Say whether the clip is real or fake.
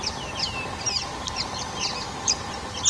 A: real